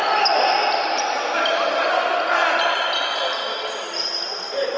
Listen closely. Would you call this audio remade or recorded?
recorded